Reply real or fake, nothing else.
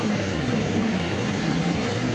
fake